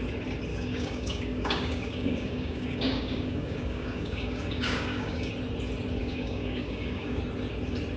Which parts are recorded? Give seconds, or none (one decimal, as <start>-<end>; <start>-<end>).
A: 0.0-0.5; 5.3-6.0; 7.2-8.0